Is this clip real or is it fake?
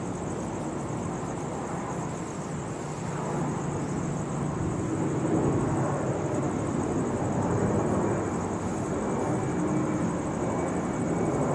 real